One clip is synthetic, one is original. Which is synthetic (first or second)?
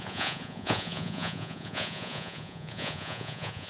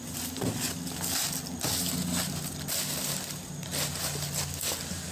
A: first